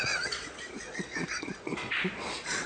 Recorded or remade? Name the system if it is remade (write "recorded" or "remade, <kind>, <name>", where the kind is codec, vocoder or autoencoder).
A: remade, vocoder, Vocos